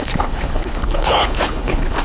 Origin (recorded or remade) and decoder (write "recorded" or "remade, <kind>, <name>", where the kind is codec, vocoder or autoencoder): remade, codec, HILCodec